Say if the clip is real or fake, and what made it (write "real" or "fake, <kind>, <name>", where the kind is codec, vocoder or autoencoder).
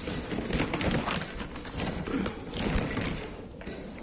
real